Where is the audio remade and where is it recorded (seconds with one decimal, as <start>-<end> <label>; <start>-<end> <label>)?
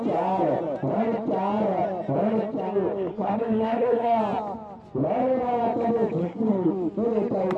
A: 0.0-3.1 recorded; 3.1-4.2 remade; 4.2-6.2 recorded; 6.2-6.7 remade; 6.7-7.6 recorded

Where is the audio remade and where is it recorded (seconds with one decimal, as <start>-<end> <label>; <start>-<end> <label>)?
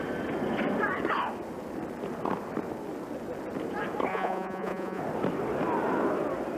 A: 0.0-4.1 recorded; 4.1-5.0 remade; 5.0-6.6 recorded